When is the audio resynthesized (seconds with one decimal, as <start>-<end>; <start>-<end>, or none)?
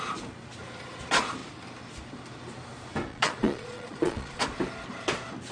3.1-4.4